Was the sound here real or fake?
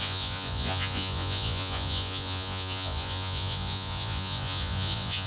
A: fake